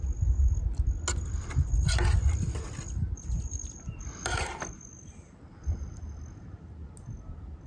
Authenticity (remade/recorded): recorded